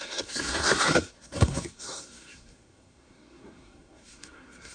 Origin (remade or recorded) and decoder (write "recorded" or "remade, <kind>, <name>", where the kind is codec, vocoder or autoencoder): remade, codec, SNAC